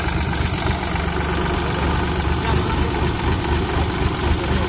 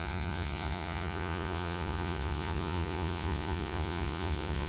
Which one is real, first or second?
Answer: first